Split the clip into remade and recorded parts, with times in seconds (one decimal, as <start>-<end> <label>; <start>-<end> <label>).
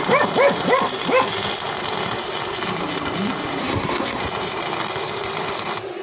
0.0-3.6 recorded; 3.6-4.2 remade; 4.2-6.0 recorded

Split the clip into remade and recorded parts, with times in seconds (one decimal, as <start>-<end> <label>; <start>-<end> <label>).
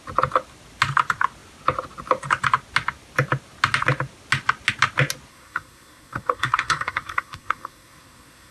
0.0-5.3 recorded; 5.3-8.5 remade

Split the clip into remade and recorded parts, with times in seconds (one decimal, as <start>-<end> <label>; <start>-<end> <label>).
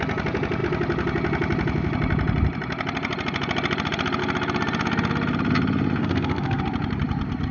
0.0-6.0 recorded; 6.0-6.6 remade; 6.6-7.5 recorded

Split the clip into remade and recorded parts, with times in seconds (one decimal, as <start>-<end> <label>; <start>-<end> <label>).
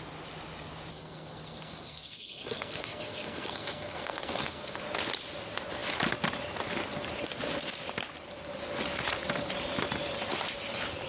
0.0-0.9 recorded; 0.9-4.8 remade; 4.8-11.1 recorded